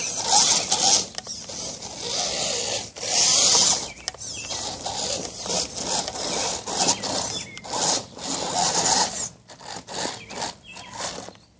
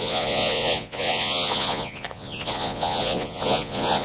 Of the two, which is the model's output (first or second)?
second